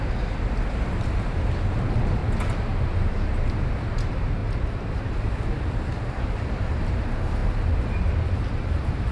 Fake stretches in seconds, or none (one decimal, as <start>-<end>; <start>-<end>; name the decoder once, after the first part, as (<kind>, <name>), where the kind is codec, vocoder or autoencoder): 0.0-2.2 (vocoder, BigVGAN v2); 2.8-4.4; 4.9-9.1